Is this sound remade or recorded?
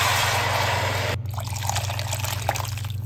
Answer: recorded